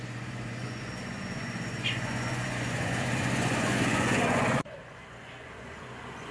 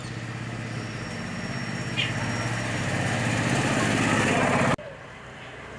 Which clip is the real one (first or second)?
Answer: second